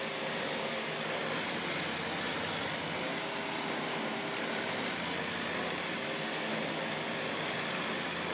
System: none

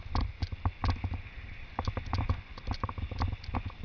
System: none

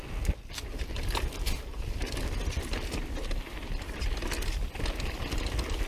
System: none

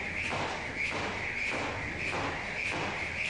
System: none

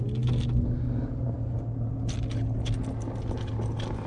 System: none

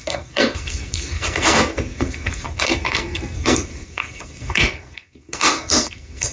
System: codec, SNAC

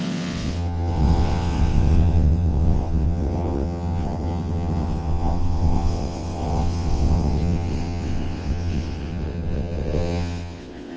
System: vocoder, WaveNeXt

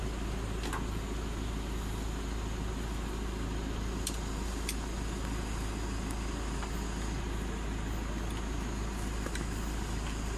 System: none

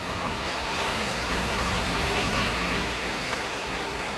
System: codec, SNAC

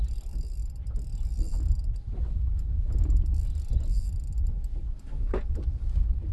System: none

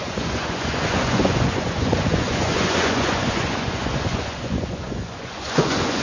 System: vocoder, Vocos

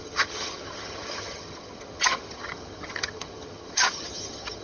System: vocoder, HiFi-GAN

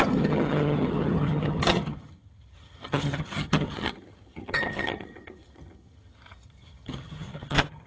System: vocoder, HiFi-GAN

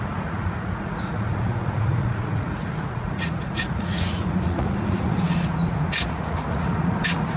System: vocoder, Vocos